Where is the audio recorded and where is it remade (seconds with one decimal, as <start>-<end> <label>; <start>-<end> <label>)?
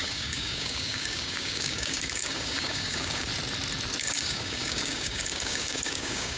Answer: 0.0-3.3 remade; 3.3-4.0 recorded; 4.0-6.4 remade